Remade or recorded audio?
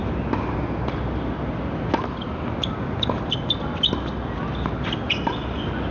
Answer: recorded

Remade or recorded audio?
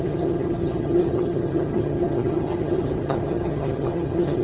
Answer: remade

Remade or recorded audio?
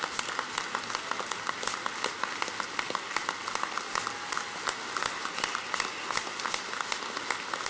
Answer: recorded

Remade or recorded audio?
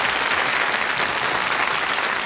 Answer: recorded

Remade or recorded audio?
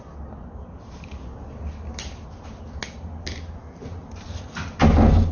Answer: recorded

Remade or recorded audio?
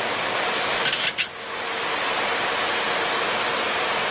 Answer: recorded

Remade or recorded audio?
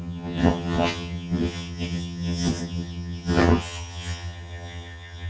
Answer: remade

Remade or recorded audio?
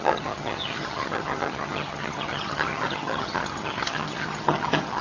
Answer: remade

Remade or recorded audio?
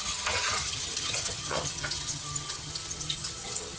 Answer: remade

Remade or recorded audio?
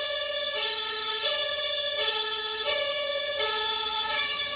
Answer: remade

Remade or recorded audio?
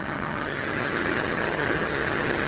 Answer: remade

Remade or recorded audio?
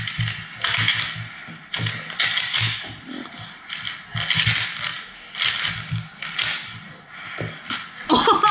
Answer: recorded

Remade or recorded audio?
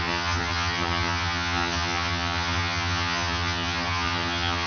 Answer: remade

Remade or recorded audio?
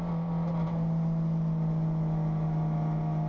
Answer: recorded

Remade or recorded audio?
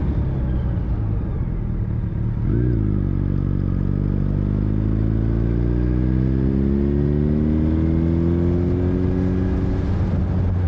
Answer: recorded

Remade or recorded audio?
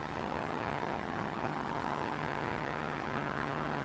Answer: remade